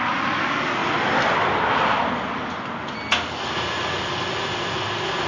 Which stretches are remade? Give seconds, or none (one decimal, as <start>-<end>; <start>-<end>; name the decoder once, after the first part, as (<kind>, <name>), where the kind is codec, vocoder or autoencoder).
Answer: none